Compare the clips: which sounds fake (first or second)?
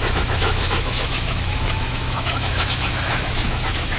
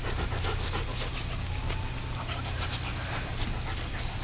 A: first